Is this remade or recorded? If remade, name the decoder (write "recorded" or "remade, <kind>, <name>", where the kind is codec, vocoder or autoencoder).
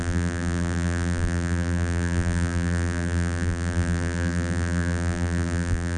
remade, vocoder, BigVGAN v2